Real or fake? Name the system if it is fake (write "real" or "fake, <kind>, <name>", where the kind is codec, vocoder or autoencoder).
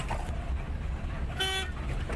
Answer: real